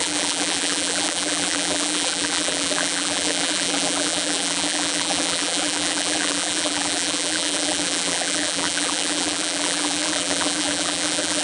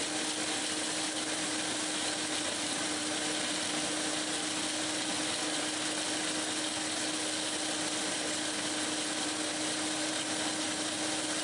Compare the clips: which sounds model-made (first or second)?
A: first